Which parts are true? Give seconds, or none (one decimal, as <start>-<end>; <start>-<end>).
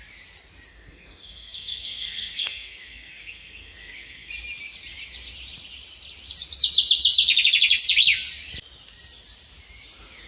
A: 0.0-0.7; 4.3-10.3